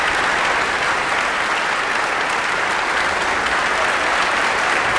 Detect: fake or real real